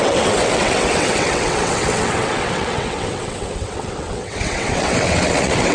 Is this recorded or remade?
remade